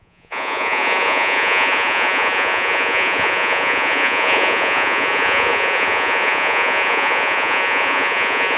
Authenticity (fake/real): fake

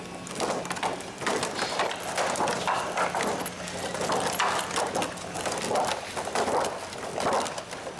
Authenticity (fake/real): real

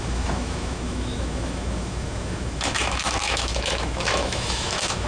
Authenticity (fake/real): fake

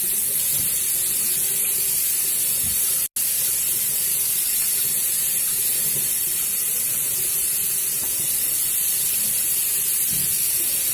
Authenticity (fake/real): real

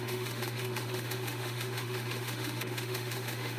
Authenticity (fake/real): fake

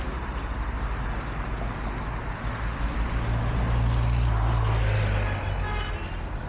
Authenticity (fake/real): real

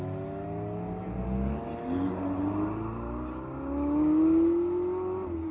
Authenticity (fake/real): real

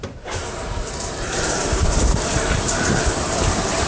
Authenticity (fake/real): fake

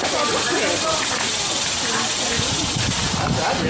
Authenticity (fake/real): real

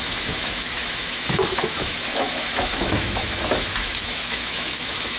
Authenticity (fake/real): fake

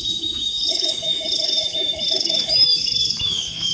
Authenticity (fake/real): fake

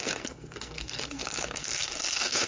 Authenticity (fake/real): fake